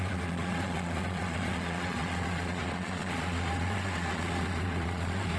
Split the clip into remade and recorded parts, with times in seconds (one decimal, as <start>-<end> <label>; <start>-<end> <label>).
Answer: 0.0-5.4 remade